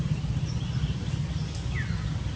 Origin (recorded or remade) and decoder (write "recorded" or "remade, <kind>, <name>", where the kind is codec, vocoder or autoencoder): recorded